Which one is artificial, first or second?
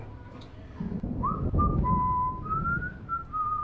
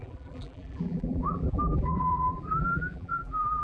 second